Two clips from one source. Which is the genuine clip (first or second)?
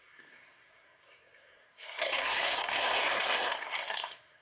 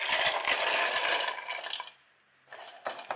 second